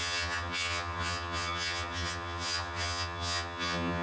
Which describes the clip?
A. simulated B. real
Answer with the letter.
A